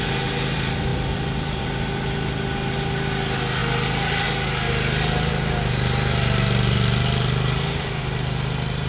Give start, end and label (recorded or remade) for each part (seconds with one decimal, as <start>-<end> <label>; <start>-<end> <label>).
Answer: 0.0-0.9 recorded; 0.9-1.6 remade; 1.6-8.9 recorded